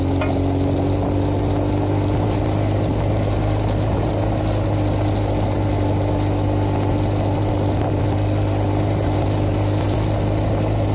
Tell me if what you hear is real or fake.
real